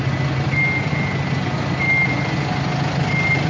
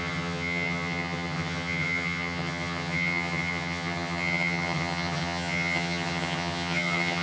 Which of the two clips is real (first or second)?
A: first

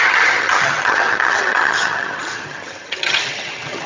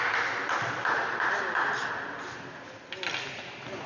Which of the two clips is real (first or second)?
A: second